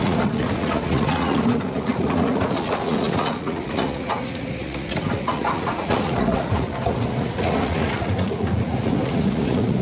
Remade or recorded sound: remade